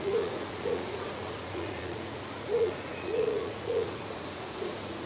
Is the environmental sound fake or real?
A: fake